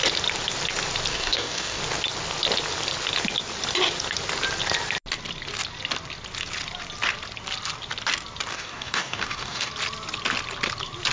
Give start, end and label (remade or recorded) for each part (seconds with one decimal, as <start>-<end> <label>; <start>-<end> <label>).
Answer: 0.0-1.1 recorded; 1.1-1.8 remade; 1.8-8.5 recorded; 8.5-9.7 remade; 9.7-11.1 recorded